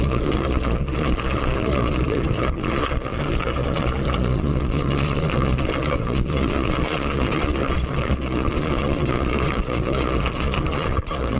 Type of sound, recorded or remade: remade